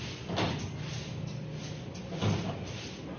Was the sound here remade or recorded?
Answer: recorded